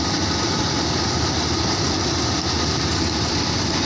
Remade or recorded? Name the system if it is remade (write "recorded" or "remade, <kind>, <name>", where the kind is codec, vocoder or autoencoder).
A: recorded